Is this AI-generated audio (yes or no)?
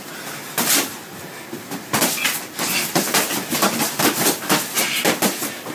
no